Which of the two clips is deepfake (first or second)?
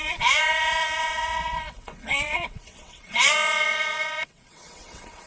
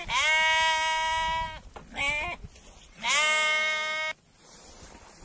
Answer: first